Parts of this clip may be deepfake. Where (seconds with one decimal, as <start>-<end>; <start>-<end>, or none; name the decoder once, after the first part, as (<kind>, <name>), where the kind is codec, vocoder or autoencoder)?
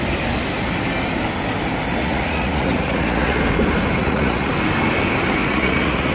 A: 2.0-3.4 (vocoder, Vocos); 4.0-4.5; 5.4-6.1